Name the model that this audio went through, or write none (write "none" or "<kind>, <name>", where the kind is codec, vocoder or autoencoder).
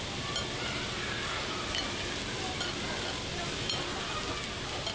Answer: none